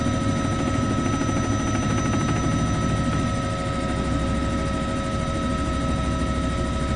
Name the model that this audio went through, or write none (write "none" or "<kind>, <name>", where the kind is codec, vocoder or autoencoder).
none